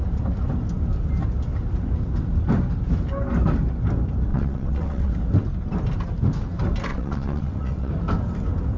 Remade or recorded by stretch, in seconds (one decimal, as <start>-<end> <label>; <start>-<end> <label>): 0.0-4.3 recorded; 4.3-5.1 remade; 5.1-6.9 recorded; 6.9-7.9 remade; 7.9-8.8 recorded